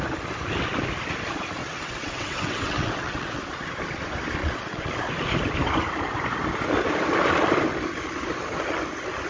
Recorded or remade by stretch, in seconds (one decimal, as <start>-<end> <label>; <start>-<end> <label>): 0.0-1.6 recorded; 1.6-3.4 remade; 3.4-4.4 recorded; 4.4-4.9 remade; 4.9-9.3 recorded